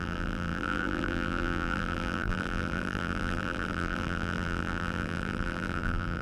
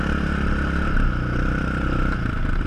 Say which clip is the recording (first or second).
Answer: second